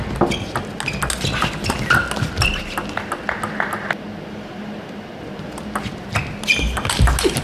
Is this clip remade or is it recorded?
recorded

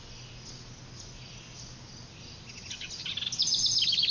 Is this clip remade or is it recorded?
recorded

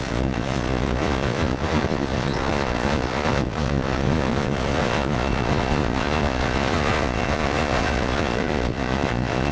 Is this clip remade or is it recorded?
remade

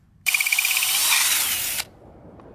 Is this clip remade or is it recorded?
remade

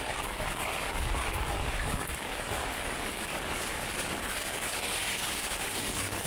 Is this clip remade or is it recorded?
remade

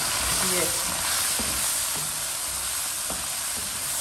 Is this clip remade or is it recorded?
recorded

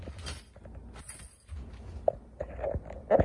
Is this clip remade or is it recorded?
recorded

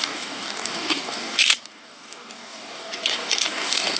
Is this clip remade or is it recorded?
remade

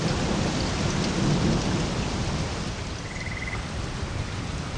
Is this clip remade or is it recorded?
remade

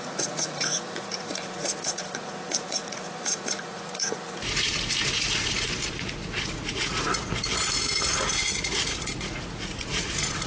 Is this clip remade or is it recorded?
remade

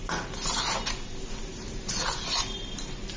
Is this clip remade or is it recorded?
recorded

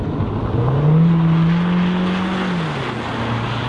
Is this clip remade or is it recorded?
recorded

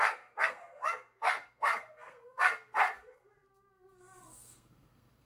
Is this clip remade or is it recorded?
remade